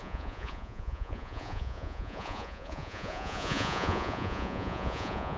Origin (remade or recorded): remade